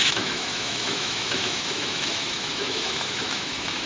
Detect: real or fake fake